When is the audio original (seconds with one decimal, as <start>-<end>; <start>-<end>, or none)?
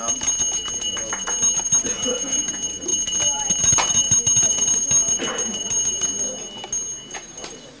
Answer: 0.0-7.8